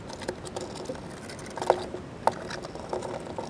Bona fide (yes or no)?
yes